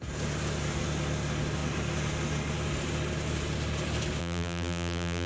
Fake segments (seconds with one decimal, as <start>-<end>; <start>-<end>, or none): 4.2-5.3

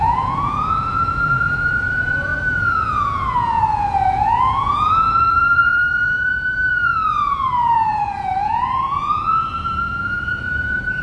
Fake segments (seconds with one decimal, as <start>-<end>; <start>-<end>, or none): 0.0-11.0